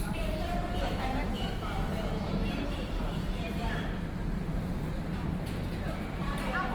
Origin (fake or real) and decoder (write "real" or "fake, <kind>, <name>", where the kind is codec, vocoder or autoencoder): fake, vocoder, BigVGAN v2